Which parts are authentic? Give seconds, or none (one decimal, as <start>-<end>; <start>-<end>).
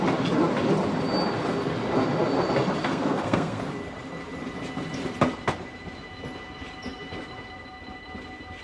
0.0-2.8; 3.6-8.6